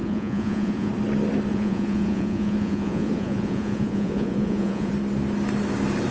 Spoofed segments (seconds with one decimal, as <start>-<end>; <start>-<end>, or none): 0.0-0.9; 1.5-4.9